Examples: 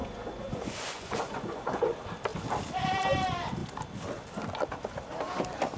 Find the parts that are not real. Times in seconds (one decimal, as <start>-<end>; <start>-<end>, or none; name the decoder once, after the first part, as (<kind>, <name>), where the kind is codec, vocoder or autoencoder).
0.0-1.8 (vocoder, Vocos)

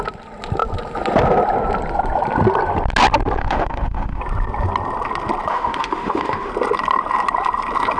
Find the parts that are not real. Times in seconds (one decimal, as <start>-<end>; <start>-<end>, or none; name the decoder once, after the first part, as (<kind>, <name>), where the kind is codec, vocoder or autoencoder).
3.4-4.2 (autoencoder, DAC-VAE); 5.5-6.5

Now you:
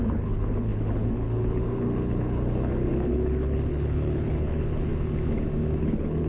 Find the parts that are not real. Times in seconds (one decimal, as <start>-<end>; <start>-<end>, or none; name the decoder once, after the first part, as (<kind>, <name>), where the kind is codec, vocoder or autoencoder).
0.0-4.9 (codec, HILCodec); 5.8-6.3

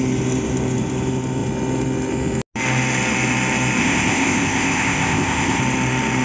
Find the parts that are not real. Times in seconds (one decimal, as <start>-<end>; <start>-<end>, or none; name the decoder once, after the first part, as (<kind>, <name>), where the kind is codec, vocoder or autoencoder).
3.8-5.6 (codec, ZipCodec)

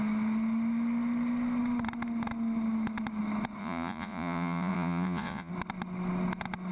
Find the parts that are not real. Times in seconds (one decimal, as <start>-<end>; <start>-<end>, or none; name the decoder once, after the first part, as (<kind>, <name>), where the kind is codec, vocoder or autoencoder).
3.6-5.5 (vocoder, Vocos)

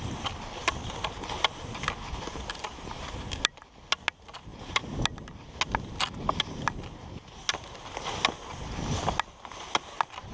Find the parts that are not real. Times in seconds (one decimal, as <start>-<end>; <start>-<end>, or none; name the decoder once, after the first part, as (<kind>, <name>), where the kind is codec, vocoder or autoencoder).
none